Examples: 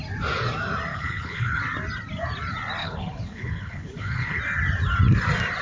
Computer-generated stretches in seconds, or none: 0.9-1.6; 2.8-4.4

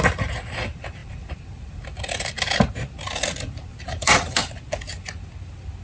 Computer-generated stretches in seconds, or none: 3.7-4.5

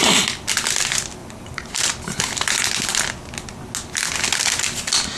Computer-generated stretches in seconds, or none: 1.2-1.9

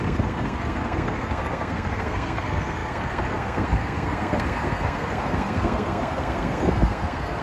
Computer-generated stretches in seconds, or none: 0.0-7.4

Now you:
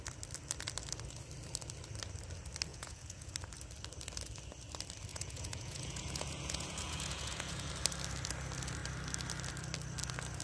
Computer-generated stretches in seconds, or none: 2.7-3.3; 5.1-7.7